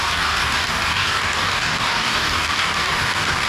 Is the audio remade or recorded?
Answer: remade